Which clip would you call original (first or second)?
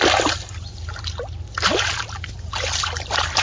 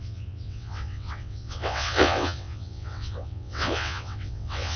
first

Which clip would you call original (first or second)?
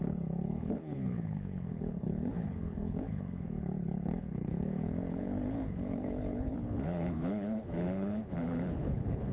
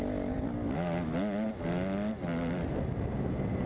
second